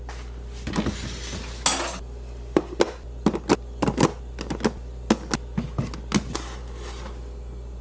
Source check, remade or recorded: recorded